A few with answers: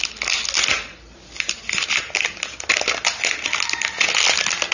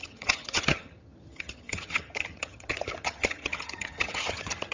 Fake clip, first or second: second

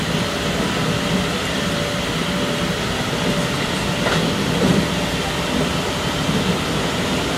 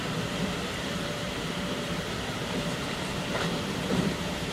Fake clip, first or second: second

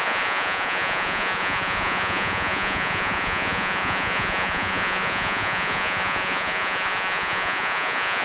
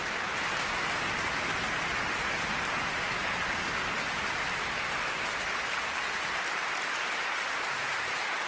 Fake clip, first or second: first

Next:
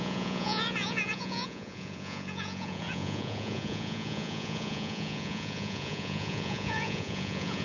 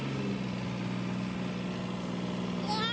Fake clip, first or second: first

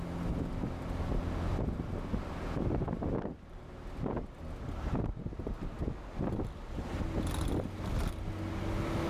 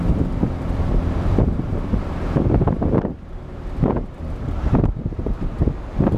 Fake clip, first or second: second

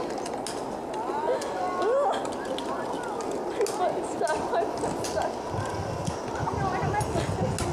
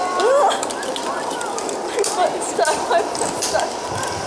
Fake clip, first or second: second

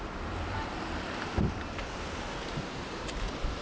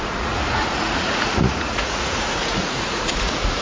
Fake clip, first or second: second